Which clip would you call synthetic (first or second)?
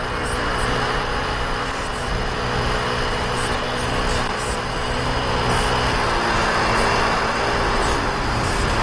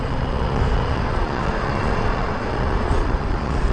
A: second